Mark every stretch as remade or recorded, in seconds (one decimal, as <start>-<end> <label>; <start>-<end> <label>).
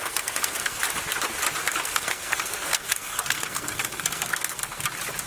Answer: 0.0-0.8 remade; 0.8-1.6 recorded; 1.6-4.8 remade; 4.8-5.3 recorded